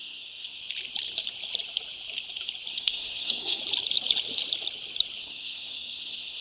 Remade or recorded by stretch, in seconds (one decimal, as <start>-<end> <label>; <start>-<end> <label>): 0.0-0.6 remade; 0.6-2.7 recorded; 2.7-3.6 remade; 3.6-5.2 recorded; 5.2-6.4 remade

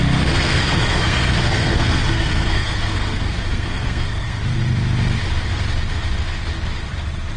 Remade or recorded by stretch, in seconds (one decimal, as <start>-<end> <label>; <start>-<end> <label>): 0.0-4.4 remade; 4.4-7.4 recorded

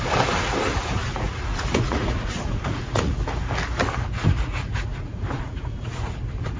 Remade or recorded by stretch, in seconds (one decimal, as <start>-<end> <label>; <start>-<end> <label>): 0.0-1.0 recorded; 1.0-3.2 remade; 3.2-4.2 recorded; 4.2-5.9 remade; 5.9-6.6 recorded

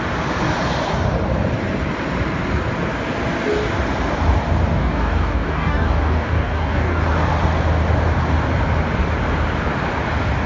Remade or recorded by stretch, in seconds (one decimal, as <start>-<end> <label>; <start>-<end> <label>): 0.0-4.8 recorded; 4.8-7.0 remade; 7.0-10.5 recorded

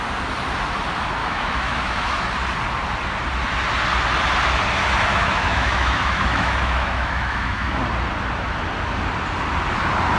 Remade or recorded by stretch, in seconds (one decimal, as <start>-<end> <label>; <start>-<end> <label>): 0.0-1.2 recorded; 1.2-2.2 remade; 2.2-5.1 recorded; 5.1-7.8 remade; 7.8-10.2 recorded

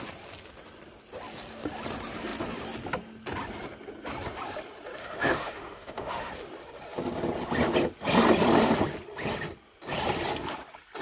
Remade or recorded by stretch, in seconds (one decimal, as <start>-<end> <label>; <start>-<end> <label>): 0.0-5.0 recorded; 5.0-6.3 remade; 6.3-11.0 recorded

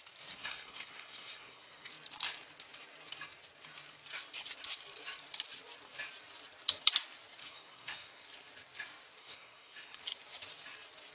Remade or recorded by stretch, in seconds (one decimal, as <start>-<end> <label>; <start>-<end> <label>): 0.0-0.4 recorded; 0.4-1.9 remade; 1.9-7.4 recorded; 7.4-8.2 remade; 8.2-9.2 recorded; 9.2-10.0 remade; 10.0-11.1 recorded